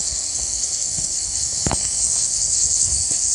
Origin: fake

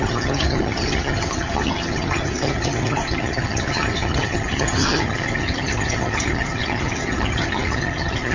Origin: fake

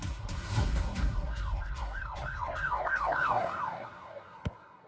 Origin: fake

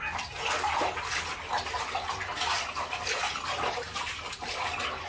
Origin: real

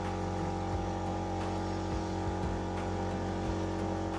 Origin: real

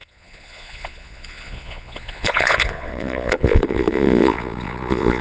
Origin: fake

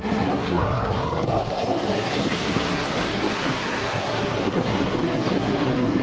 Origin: fake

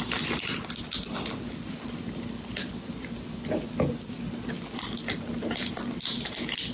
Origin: real